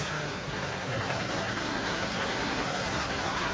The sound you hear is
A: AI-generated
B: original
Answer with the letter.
A